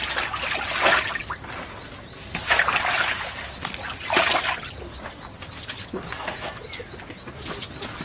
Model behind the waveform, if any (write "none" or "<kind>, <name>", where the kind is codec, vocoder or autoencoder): none